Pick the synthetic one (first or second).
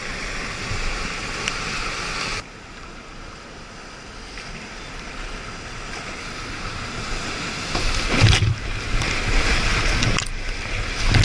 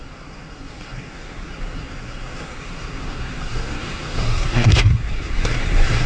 second